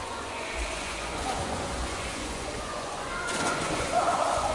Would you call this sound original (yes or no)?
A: no